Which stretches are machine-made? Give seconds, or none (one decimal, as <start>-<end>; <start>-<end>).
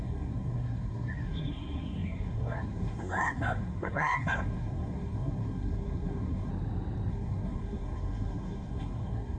0.0-6.5; 7.1-9.4